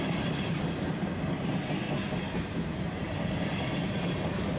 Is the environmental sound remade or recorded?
recorded